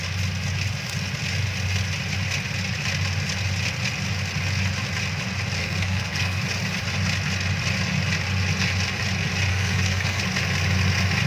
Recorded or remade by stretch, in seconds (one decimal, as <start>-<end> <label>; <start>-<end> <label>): 0.0-5.6 recorded; 5.6-6.4 remade; 6.4-9.5 recorded; 9.5-10.2 remade; 10.2-11.3 recorded